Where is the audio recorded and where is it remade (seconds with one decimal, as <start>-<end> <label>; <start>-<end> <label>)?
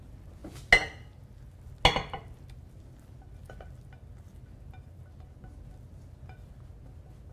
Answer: 0.0-7.3 recorded